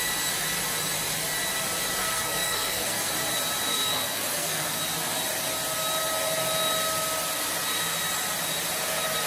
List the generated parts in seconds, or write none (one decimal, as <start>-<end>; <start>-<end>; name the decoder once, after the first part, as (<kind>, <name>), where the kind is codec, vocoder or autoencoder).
2.0-3.1 (codec, SNAC); 3.7-4.8